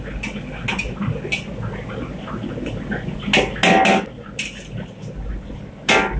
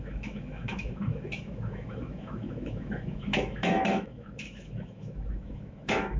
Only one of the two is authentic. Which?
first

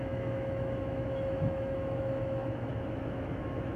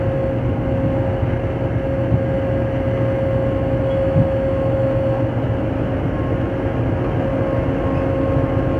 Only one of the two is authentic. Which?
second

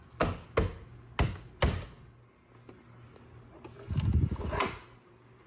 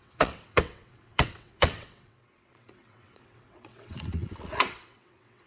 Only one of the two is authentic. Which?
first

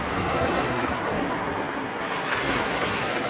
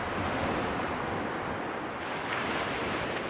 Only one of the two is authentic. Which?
second